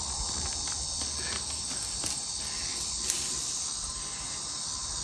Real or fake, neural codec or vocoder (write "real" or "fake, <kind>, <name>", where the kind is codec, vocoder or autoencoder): real